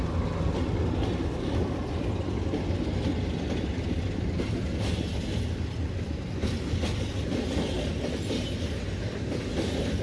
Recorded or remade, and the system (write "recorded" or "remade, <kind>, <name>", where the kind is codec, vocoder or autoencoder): recorded